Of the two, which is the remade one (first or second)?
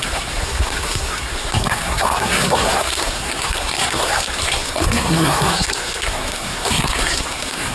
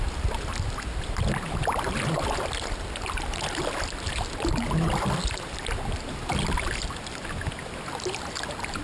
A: first